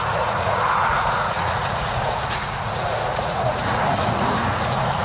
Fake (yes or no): yes